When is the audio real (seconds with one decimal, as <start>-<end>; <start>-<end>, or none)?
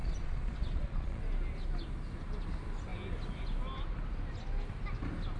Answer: 1.2-5.4